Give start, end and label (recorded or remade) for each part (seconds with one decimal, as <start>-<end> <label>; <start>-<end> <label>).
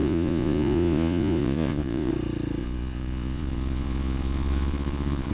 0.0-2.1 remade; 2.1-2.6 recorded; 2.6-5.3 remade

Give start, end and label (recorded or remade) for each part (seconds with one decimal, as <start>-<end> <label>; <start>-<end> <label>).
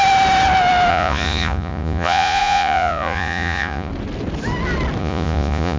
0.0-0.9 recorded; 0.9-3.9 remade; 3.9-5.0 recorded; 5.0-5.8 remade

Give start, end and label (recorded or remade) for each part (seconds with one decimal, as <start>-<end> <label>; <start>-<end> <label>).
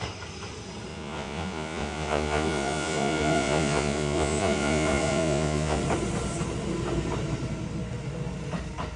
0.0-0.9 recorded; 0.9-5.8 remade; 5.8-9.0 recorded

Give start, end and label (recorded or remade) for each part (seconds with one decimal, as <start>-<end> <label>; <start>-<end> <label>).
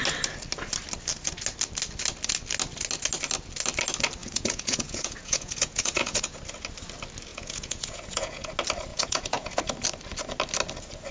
0.0-4.2 recorded; 4.2-6.4 remade; 6.4-7.3 recorded; 7.3-8.5 remade; 8.5-8.9 recorded; 8.9-9.6 remade; 9.6-11.1 recorded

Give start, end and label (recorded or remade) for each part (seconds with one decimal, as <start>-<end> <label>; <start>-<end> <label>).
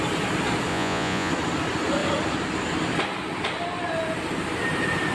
0.0-0.7 recorded; 0.7-1.3 remade; 1.3-5.1 recorded